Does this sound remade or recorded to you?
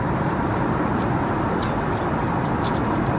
recorded